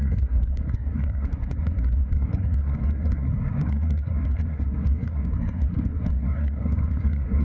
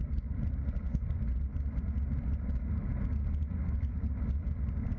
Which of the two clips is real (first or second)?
second